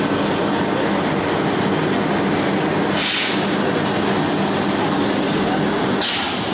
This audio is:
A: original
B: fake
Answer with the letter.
A